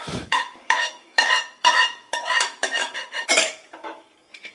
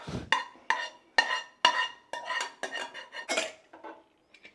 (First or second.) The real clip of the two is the second